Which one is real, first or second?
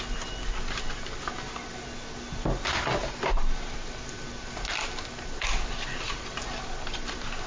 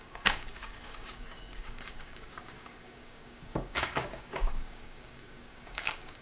first